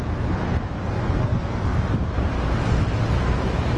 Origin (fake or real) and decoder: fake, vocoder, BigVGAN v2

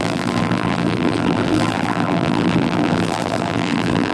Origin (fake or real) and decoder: fake, vocoder, BigVGAN v2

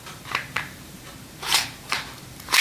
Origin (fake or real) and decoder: fake, vocoder, BigVGAN v2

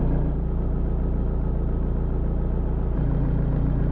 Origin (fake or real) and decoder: real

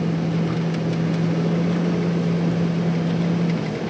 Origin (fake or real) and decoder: real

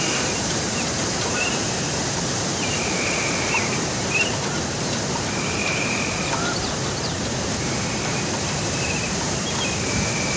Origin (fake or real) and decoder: fake, vocoder, BigVGAN v2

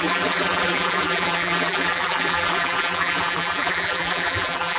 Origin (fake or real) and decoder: fake, vocoder, BigVGAN v2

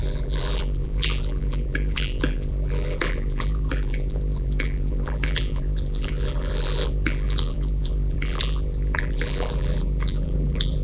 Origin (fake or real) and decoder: fake, vocoder, BigVGAN v2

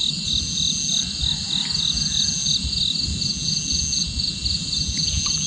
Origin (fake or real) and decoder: real